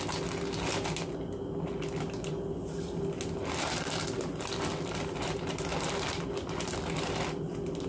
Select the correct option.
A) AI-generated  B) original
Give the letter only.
B